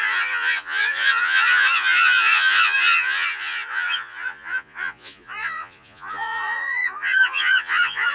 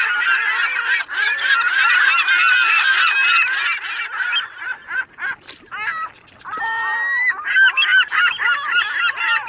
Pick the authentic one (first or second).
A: second